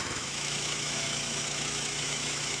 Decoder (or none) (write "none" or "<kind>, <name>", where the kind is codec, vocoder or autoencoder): autoencoder, DAC-VAE